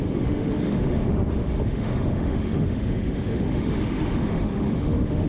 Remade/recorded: remade